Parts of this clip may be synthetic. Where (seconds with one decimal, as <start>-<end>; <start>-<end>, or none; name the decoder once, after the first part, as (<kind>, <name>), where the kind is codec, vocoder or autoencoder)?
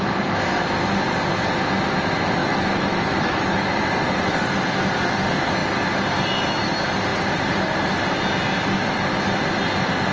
2.4-3.8 (autoencoder, DAC-VAE)